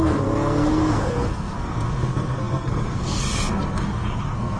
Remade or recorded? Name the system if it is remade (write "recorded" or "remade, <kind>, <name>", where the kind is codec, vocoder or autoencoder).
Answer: remade, codec, SNAC